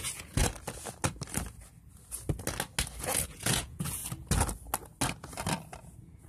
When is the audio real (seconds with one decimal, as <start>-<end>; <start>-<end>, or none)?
0.4-3.0; 4.0-5.8